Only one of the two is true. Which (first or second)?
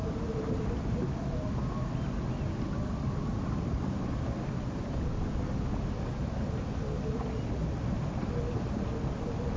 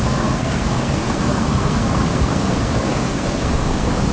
first